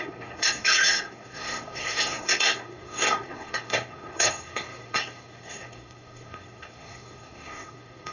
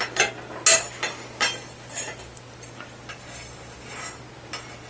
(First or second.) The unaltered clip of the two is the second